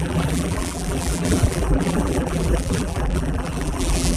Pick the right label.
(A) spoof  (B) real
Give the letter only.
A